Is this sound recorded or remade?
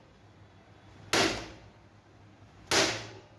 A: recorded